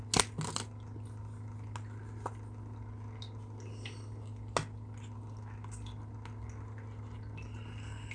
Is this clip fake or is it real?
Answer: real